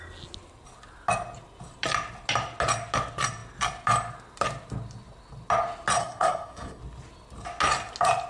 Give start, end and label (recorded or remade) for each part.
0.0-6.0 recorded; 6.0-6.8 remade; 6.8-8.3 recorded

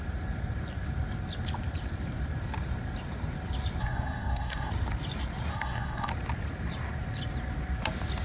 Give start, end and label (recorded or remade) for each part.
0.0-3.8 recorded; 3.8-4.7 remade; 4.7-5.5 recorded; 5.5-6.1 remade; 6.1-8.2 recorded

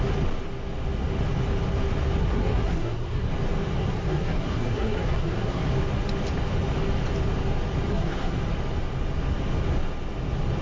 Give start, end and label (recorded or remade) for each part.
0.0-2.2 recorded; 2.2-3.3 remade; 3.3-3.8 recorded; 3.8-5.7 remade; 5.7-7.9 recorded; 7.9-8.4 remade; 8.4-10.6 recorded

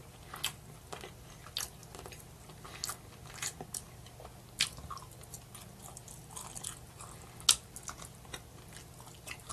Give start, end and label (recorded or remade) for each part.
0.0-9.5 recorded

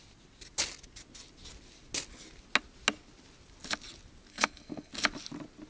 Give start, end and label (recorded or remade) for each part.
0.0-4.3 recorded; 4.3-4.9 remade; 4.9-5.7 recorded

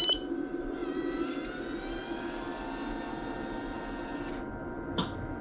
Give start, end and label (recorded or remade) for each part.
0.0-5.4 recorded